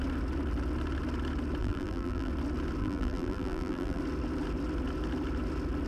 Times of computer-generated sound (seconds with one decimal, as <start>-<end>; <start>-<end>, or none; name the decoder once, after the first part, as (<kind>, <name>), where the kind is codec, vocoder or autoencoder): 1.6-2.3 (vocoder, BigVGAN v2); 2.8-4.0